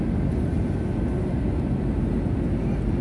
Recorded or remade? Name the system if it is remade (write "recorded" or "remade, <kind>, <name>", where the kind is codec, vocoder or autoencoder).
recorded